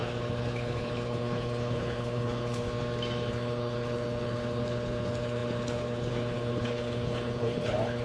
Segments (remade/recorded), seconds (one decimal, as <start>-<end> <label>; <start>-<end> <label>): 0.0-2.7 remade; 2.7-3.3 recorded; 3.3-8.0 remade